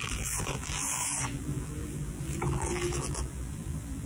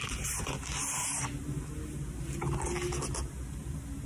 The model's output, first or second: first